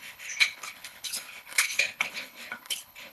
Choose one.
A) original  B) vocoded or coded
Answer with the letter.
B